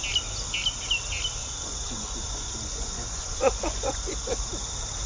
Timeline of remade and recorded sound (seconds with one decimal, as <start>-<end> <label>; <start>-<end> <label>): 0.0-1.4 recorded; 1.4-4.5 remade; 4.5-5.1 recorded